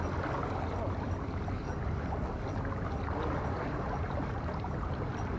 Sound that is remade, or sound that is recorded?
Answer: recorded